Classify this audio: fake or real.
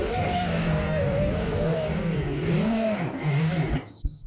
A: fake